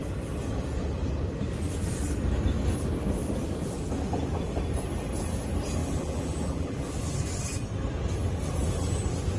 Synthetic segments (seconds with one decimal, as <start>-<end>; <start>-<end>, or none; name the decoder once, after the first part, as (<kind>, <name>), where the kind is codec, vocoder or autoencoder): 5.8-6.9 (vocoder, BigVGAN v2)